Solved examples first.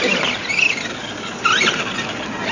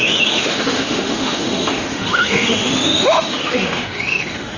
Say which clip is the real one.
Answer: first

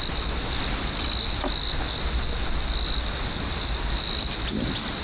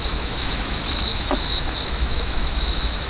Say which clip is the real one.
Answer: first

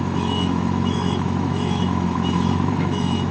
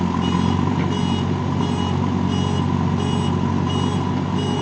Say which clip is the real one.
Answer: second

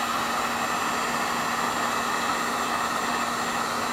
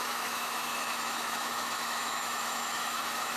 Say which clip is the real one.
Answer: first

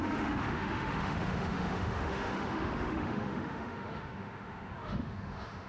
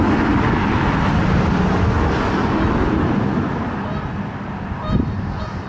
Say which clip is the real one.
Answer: second